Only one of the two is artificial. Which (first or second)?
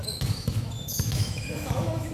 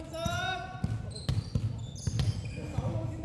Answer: first